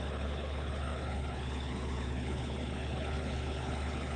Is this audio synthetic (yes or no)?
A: yes